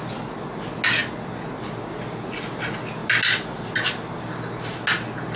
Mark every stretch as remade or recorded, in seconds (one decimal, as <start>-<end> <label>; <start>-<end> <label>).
0.0-5.4 recorded